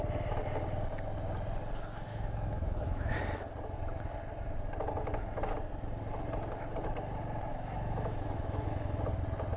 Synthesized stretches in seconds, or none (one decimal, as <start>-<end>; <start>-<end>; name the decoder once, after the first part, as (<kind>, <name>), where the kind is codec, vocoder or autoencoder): 2.1-3.1 (autoencoder, DAC-VAE); 7.5-8.9